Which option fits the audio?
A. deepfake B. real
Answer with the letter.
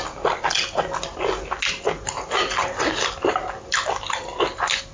B